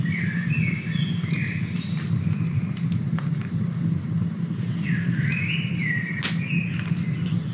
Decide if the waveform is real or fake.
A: real